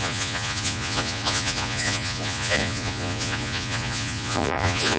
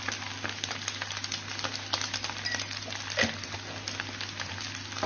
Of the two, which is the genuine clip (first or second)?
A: second